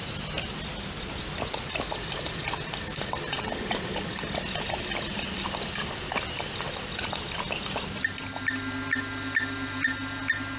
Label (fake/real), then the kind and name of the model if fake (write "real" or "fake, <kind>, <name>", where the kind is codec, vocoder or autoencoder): real